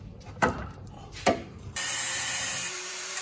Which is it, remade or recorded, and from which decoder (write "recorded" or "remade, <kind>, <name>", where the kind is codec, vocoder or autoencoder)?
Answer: remade, vocoder, BigVGAN v2